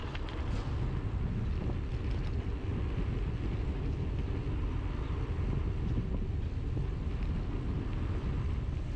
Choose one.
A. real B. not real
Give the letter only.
A